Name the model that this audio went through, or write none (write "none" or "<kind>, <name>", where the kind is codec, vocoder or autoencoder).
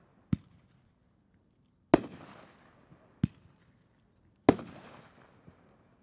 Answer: none